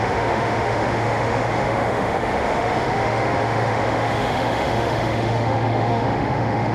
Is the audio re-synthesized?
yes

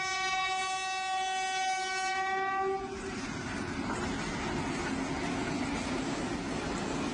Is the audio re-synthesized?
no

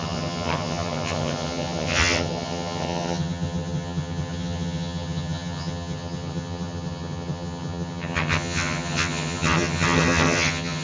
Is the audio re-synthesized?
yes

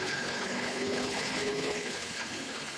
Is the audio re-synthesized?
yes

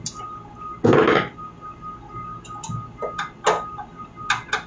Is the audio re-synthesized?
no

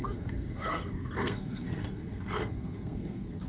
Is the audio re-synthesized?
yes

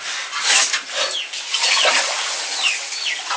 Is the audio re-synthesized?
no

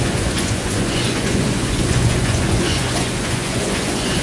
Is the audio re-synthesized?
yes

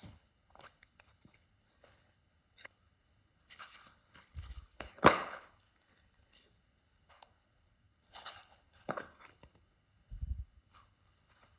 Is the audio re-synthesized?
yes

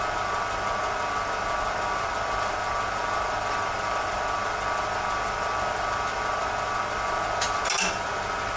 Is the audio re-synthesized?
no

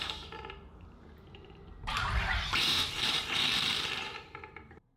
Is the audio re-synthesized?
yes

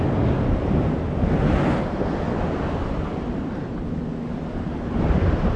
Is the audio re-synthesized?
no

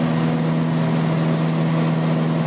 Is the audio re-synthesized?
no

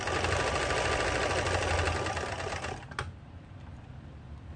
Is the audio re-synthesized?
no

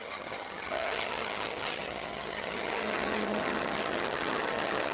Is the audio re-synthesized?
yes